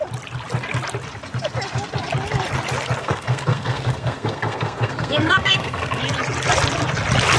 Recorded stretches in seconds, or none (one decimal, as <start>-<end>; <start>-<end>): 0.0-3.0; 6.0-7.4

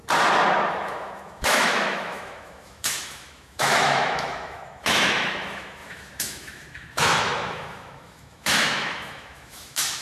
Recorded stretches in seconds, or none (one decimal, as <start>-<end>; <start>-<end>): 0.0-0.7

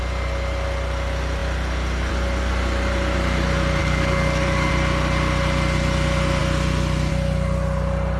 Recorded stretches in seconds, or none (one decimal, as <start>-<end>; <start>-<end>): 0.0-3.8; 4.7-8.2

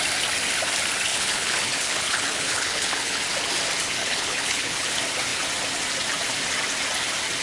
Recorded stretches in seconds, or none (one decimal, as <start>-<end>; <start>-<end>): 0.0-1.1; 3.2-4.0; 4.8-7.4

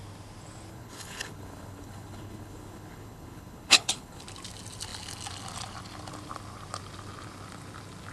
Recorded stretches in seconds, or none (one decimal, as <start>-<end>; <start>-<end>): 0.0-0.7; 4.2-8.1